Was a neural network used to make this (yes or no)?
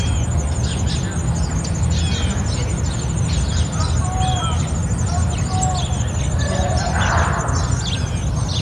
no